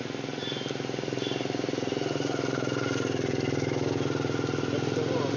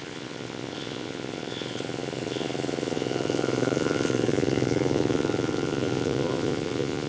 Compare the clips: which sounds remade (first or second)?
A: second